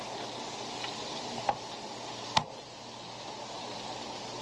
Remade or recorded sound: recorded